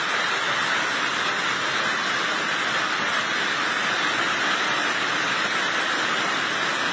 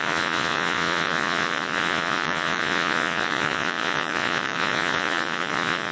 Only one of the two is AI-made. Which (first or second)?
second